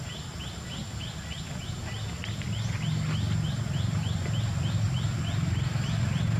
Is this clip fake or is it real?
real